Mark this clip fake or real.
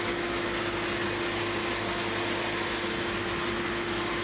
real